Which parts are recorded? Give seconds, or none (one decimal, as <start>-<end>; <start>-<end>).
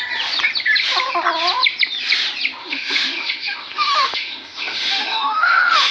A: 0.0-2.6